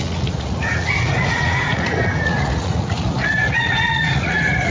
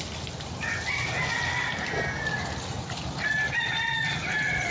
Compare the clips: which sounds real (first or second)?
second